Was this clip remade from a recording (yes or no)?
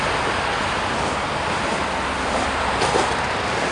no